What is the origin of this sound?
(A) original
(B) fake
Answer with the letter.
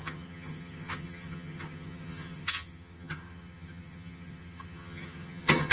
B